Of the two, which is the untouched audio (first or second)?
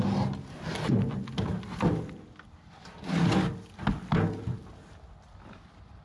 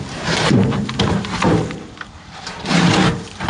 first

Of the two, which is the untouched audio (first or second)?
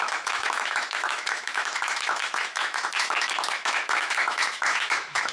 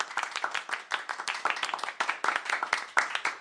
second